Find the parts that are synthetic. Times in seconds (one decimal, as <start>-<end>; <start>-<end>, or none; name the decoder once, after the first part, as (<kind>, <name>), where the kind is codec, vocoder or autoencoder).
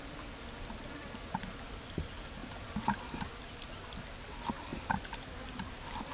none